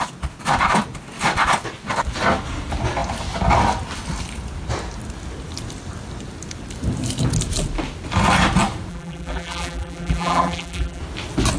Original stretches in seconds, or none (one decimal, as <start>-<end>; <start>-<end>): 0.0-8.9; 11.0-11.6